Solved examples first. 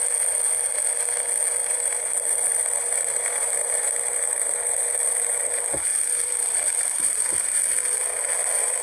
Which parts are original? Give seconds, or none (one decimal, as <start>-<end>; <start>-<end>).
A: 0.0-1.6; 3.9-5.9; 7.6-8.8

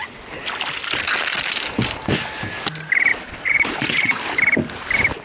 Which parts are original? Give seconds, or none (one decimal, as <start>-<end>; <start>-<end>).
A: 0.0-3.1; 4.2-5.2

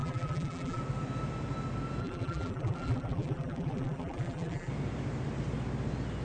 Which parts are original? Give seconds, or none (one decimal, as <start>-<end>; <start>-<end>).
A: 0.8-2.0; 4.7-6.2

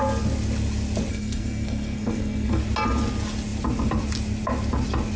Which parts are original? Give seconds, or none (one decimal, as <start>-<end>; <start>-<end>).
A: 0.0-1.1; 2.6-5.2

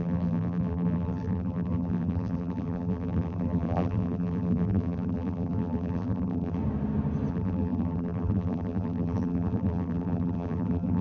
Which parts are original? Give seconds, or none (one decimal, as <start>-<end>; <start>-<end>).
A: 6.6-7.3